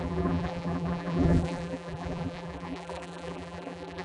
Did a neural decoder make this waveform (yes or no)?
yes